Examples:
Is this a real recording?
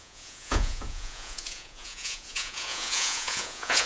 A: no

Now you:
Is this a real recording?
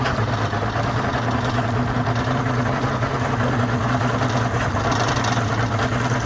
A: yes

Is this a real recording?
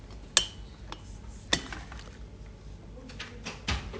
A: yes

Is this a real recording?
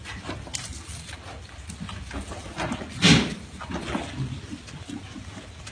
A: yes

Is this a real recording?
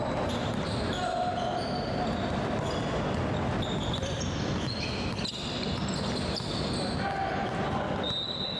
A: yes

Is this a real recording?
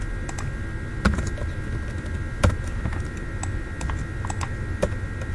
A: yes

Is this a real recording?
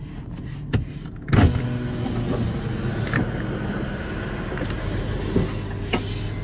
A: yes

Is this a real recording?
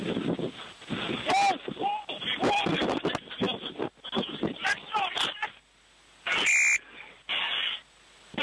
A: yes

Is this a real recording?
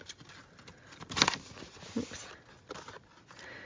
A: yes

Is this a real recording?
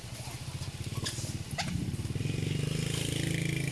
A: yes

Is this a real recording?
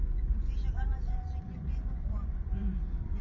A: no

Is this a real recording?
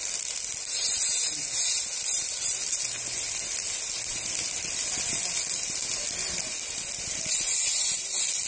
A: yes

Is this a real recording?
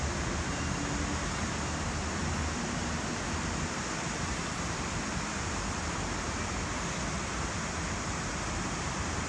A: yes